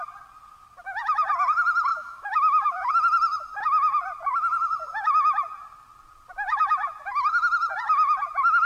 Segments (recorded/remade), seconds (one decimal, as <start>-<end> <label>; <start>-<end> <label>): 0.0-1.9 recorded; 1.9-2.9 remade; 2.9-8.7 recorded